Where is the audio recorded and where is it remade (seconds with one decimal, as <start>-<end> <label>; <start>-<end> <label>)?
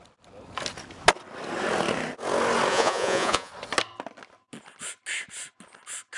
0.0-2.7 recorded; 2.7-3.5 remade; 3.5-6.2 recorded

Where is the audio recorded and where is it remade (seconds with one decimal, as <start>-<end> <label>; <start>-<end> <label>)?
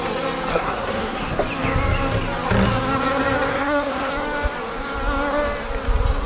0.0-0.5 recorded; 0.5-1.3 remade; 1.3-3.5 recorded; 3.5-4.1 remade; 4.1-6.3 recorded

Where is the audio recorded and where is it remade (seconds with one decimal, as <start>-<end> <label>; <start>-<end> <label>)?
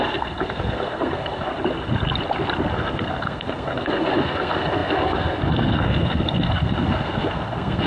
0.0-1.5 remade; 1.5-2.7 recorded; 2.7-7.9 remade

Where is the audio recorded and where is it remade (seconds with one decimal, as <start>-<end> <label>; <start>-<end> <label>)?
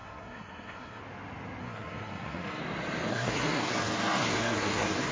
0.0-1.0 remade; 1.0-1.6 recorded; 1.6-2.6 remade; 2.6-3.1 recorded; 3.1-5.1 remade